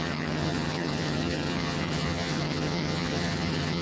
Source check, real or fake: fake